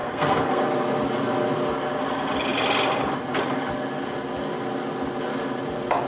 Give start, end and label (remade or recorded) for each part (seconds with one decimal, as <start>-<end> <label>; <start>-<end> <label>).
0.0-0.6 remade; 0.6-6.1 recorded